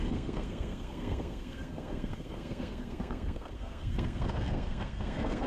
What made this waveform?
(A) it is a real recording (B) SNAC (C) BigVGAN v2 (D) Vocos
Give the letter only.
B